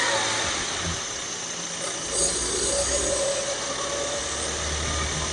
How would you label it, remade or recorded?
recorded